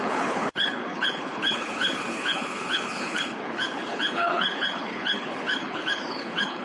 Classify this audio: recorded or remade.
remade